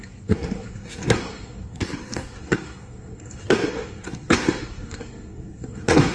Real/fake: fake